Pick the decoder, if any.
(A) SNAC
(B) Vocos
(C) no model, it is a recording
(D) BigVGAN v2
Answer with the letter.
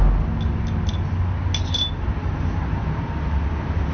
C